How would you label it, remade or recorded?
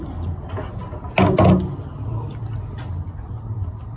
recorded